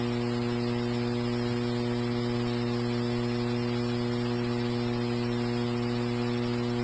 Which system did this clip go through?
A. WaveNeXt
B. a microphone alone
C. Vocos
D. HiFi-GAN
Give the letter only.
B